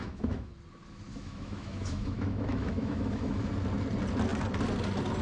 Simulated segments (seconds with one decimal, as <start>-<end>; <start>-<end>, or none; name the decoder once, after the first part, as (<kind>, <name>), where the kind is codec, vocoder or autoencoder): 0.0-0.5 (autoencoder, DAC-VAE); 1.1-3.5